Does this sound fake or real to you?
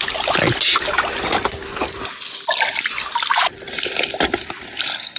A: real